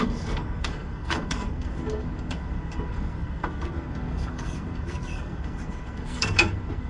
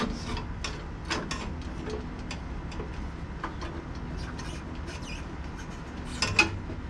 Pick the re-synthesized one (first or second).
first